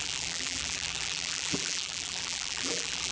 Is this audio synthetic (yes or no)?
yes